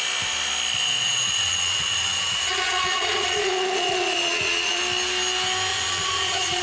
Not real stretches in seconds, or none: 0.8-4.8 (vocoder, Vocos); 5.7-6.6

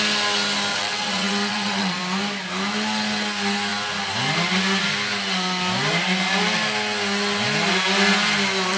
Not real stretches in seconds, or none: 0.7-2.0 (vocoder, WaveNeXt)

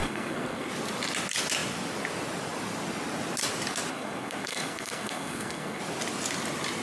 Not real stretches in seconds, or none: 0.0-0.7 (codec, SNAC); 3.9-5.8

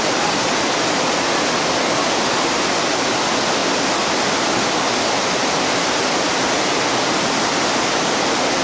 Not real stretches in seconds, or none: 0.0-8.6 (vocoder, BigVGAN v2)

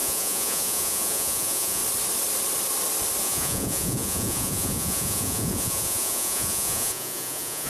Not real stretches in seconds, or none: 0.0-1.8 (vocoder, Vocos); 3.2-7.7

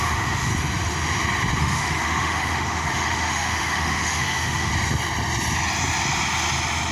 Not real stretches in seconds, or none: 0.0-0.5 (autoencoder, DAC-VAE); 1.6-4.7

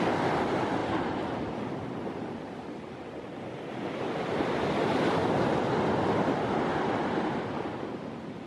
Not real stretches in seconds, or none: none